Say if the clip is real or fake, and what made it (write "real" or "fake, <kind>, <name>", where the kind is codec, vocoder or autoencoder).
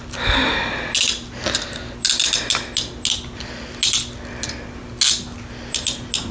real